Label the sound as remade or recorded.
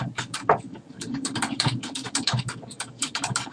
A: remade